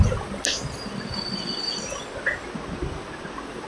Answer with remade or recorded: recorded